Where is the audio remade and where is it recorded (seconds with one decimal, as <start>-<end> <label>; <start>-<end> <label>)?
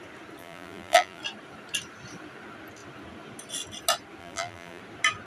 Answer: 0.0-0.4 recorded; 0.4-1.2 remade; 1.2-4.2 recorded; 4.2-4.8 remade; 4.8-5.3 recorded